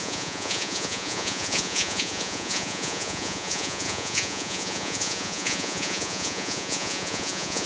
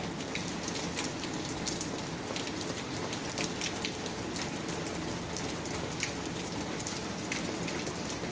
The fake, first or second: first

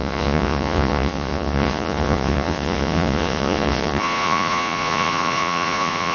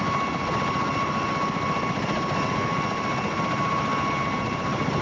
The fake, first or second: first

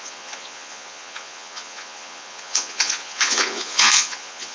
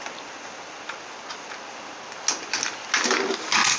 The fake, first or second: first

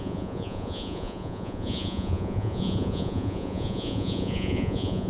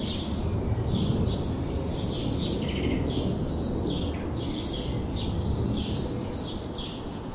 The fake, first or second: first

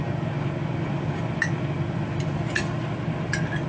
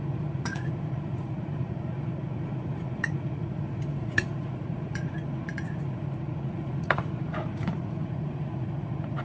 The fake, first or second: second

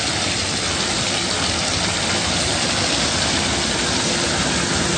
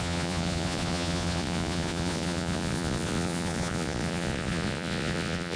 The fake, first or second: second